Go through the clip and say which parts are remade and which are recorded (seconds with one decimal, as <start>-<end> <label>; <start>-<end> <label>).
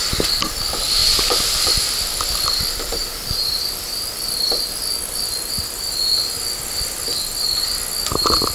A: 0.0-1.0 recorded; 1.0-6.1 remade; 6.1-8.5 recorded